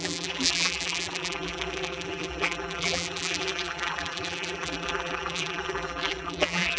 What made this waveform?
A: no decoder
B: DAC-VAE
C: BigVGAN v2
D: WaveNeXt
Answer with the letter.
C